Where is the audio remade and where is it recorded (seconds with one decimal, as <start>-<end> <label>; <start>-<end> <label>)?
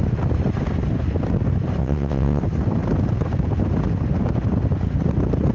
0.0-1.8 recorded; 1.8-2.4 remade; 2.4-5.5 recorded